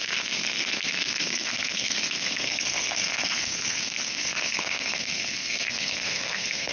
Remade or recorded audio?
remade